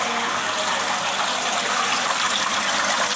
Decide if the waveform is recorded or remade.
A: recorded